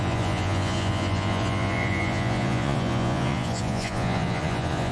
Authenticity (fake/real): fake